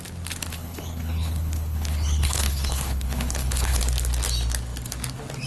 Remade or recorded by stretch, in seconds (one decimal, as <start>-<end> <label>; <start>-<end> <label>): 0.0-0.5 recorded; 0.5-3.8 remade; 3.8-5.5 recorded